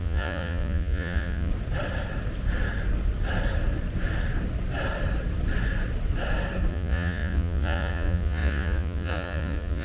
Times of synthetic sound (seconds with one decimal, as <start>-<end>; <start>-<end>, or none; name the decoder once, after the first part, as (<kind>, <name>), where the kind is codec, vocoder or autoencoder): 0.0-1.5 (vocoder, Vocos); 6.7-9.8